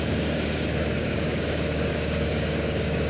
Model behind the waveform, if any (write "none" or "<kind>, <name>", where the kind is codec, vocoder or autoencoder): codec, DAC